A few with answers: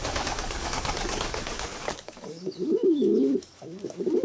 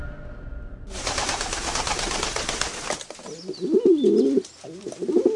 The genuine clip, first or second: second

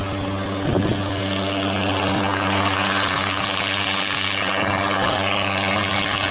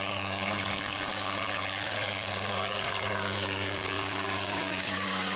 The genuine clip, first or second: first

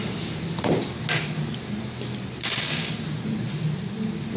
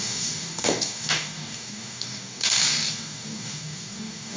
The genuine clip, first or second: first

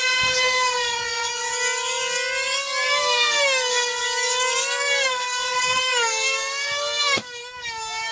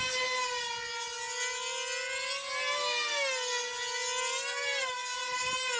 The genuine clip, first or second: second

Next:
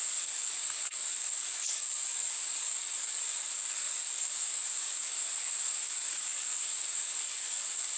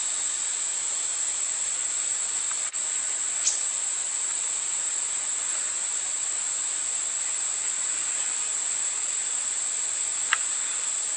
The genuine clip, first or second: second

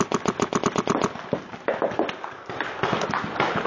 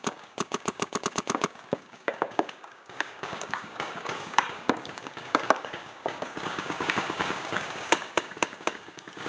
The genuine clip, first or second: first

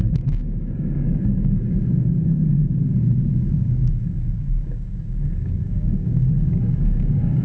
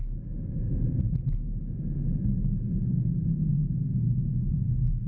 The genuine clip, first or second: second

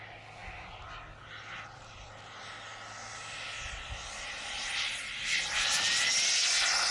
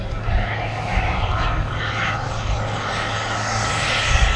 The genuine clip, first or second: first